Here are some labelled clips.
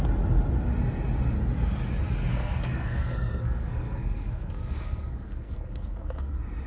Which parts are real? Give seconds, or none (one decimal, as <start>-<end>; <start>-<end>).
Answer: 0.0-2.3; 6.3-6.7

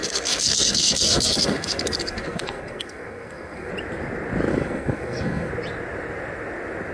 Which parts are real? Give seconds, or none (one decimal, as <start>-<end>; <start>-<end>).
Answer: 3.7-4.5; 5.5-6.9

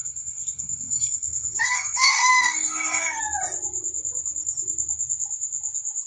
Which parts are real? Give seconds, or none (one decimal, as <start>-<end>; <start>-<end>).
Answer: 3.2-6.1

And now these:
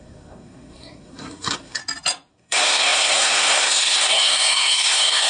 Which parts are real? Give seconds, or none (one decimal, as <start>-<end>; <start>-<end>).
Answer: 1.8-2.3